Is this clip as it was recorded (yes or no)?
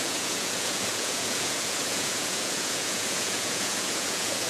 no